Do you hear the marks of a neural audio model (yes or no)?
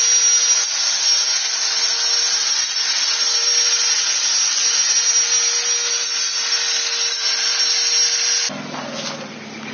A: no